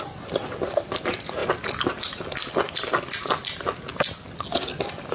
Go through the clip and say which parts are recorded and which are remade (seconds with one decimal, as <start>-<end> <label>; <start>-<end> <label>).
0.0-5.1 recorded